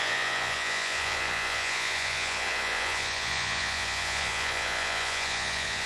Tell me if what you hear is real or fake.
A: fake